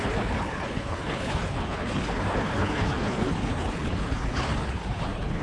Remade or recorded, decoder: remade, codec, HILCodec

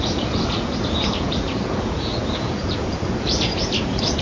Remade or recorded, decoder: remade, vocoder, Vocos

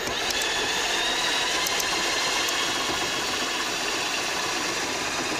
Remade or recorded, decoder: recorded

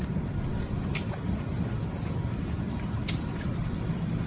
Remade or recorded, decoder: recorded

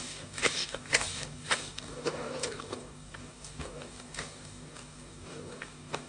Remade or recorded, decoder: remade, codec, DAC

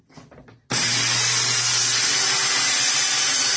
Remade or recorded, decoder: recorded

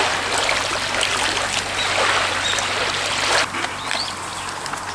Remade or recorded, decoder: recorded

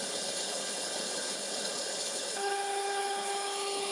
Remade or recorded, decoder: remade, codec, HILCodec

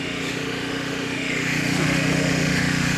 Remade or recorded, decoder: remade, autoencoder, DAC-VAE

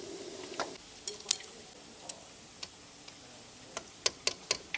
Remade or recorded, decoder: recorded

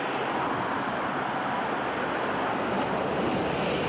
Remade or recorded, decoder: recorded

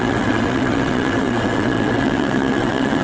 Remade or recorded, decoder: remade, vocoder, WaveNeXt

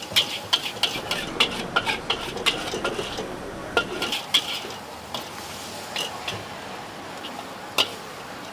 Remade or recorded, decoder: recorded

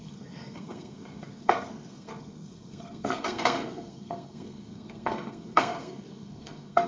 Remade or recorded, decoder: remade, codec, SNAC